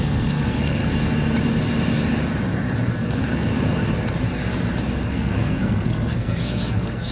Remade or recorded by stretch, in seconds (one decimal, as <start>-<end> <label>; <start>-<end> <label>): 0.0-0.8 remade; 0.8-2.9 recorded; 2.9-3.5 remade; 3.5-5.1 recorded; 5.1-7.1 remade